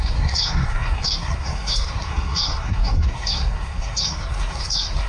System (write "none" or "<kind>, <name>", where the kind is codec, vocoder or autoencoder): codec, SNAC